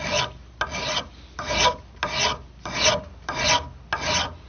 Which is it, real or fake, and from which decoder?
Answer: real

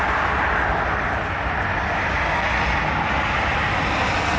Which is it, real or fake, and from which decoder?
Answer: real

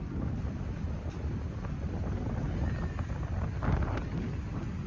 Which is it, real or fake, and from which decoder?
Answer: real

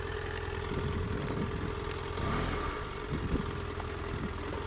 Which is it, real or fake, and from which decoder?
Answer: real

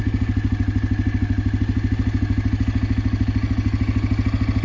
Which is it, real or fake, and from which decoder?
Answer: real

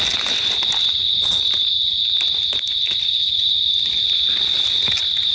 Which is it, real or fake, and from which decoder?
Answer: real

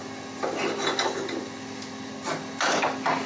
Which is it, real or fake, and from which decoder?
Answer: real